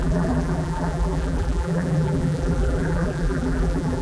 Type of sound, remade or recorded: remade